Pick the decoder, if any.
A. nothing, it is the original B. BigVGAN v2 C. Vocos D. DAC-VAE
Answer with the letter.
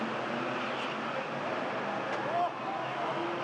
A